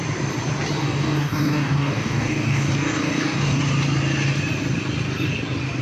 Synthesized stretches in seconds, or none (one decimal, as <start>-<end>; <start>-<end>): 0.8-3.6